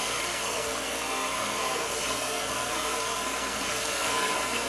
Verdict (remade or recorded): remade